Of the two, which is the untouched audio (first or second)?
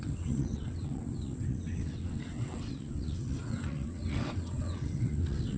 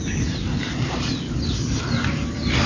second